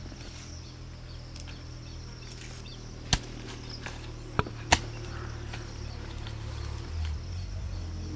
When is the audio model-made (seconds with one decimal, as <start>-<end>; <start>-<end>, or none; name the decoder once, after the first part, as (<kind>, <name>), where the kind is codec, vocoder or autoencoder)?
none